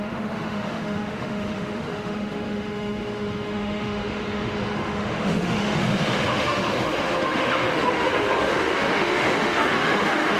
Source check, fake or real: fake